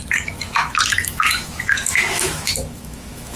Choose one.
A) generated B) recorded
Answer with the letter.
A